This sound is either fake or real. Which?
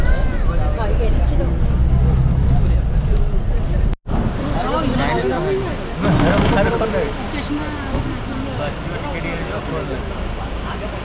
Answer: real